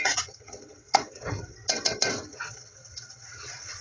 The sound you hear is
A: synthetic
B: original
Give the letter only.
A